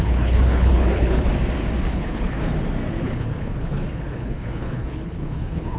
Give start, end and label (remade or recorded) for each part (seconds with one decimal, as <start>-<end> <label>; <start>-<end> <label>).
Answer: 0.0-1.3 remade; 1.3-1.8 recorded; 1.8-2.4 remade; 2.4-3.0 recorded; 3.0-5.8 remade